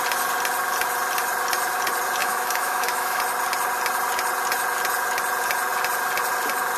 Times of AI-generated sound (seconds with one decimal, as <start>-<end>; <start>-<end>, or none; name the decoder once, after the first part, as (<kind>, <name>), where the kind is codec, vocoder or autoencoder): 2.2-3.2 (autoencoder, DAC-VAE)